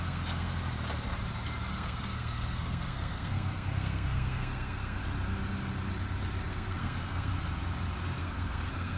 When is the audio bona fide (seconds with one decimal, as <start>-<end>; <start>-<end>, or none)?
0.5-1.7; 5.0-6.5; 7.3-8.2